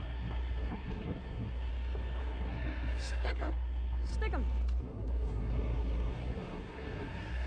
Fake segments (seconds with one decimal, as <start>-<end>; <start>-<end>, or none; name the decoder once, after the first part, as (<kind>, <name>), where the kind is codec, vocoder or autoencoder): 0.0-1.7 (codec, SNAC); 2.2-4.1; 4.8-7.5